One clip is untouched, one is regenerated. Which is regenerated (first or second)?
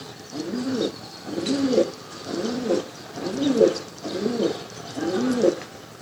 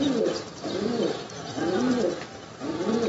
second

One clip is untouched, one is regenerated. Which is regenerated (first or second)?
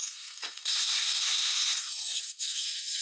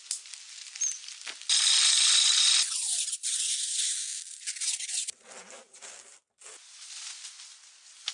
first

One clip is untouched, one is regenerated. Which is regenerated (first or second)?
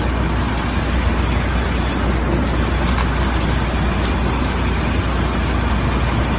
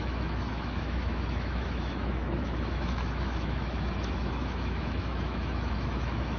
second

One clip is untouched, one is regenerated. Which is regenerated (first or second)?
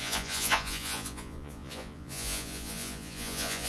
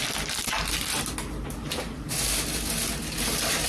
first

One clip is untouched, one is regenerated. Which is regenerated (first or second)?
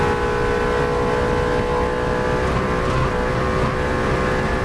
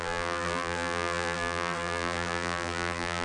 second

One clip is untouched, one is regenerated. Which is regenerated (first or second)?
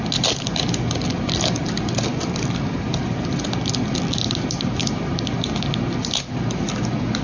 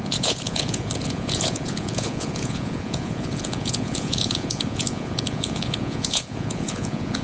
second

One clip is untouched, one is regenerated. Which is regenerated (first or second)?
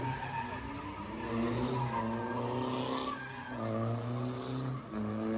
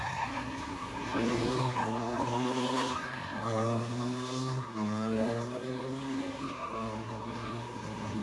second